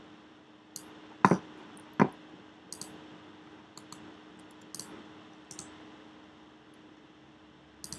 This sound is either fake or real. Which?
real